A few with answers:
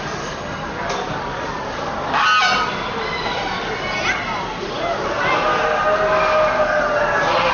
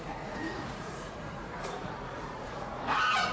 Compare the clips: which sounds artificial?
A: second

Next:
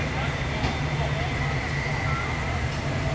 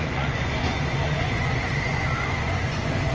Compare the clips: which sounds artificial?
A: second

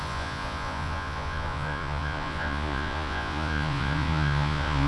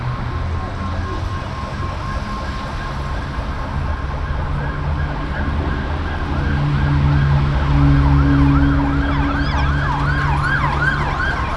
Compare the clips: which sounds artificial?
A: first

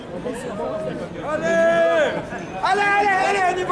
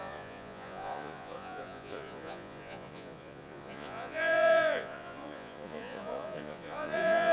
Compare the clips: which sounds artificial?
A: second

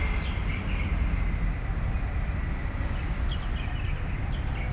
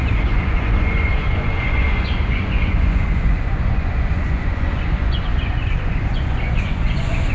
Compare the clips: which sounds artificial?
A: second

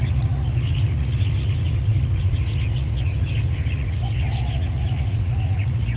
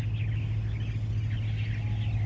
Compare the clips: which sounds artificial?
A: first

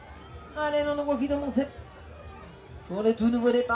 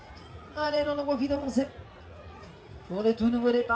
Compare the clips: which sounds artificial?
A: second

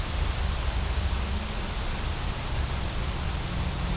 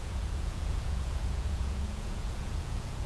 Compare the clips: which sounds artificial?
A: second